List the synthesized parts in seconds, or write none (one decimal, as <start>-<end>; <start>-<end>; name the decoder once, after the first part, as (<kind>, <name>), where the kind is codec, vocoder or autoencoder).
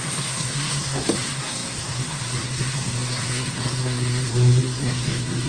0.0-5.5 (codec, SNAC)